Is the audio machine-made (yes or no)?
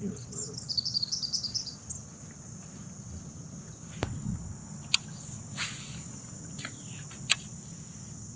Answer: no